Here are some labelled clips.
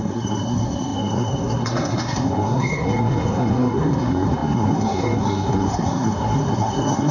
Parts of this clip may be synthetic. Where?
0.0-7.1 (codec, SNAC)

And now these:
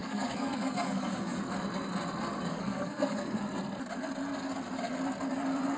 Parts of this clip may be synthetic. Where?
0.0-1.4 (codec, SNAC); 2.5-3.4